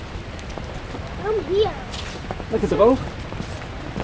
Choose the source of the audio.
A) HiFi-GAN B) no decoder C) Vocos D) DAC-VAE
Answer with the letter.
B